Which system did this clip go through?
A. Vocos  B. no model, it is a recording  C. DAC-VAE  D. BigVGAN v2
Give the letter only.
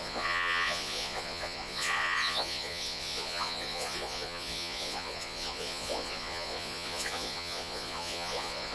A